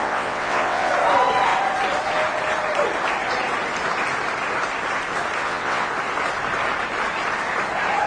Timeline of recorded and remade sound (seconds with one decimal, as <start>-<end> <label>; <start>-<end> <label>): 0.0-0.9 remade; 0.9-5.4 recorded; 5.4-5.9 remade; 5.9-8.1 recorded